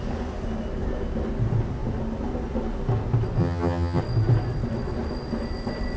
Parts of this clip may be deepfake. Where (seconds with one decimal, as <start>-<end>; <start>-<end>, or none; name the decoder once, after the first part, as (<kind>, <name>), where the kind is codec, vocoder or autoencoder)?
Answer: 3.4-4.0 (vocoder, HiFi-GAN)